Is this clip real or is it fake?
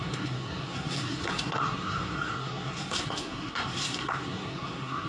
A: fake